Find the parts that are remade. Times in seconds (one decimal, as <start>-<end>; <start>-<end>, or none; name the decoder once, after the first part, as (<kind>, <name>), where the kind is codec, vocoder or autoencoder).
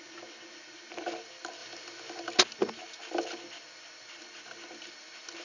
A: none